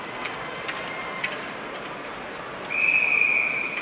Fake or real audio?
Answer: real